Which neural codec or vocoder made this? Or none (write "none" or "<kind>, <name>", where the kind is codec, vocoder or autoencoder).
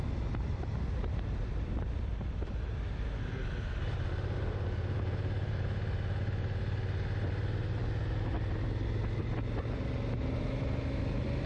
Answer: none